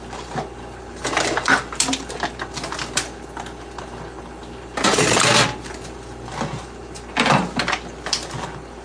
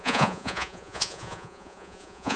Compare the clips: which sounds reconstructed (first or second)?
second